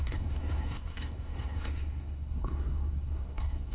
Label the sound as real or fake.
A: fake